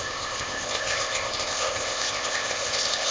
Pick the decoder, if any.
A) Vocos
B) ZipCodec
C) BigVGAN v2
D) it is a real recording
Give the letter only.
B